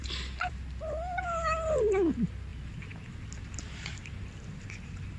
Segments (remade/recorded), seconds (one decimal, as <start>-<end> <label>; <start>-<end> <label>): 0.0-5.2 recorded